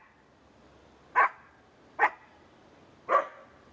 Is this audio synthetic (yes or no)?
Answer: no